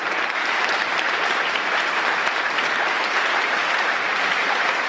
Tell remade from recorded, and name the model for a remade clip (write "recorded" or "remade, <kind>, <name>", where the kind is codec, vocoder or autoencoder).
remade, vocoder, BigVGAN v2